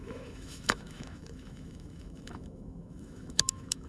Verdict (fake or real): fake